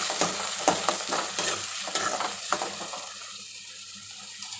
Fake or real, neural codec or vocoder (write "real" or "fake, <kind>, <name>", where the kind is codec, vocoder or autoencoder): real